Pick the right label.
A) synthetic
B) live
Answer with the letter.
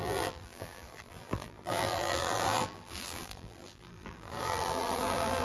A